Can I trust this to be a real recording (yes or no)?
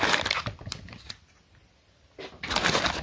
yes